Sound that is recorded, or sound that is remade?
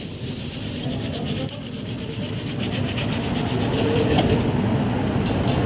recorded